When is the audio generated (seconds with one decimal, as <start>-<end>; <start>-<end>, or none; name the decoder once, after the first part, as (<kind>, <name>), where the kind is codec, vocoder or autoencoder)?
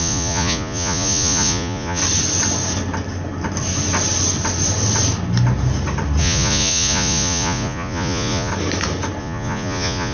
0.0-2.0 (vocoder, Vocos); 6.2-8.5; 9.2-10.1